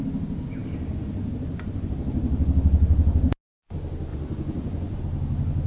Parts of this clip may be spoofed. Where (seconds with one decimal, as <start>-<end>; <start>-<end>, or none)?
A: 4.1-5.0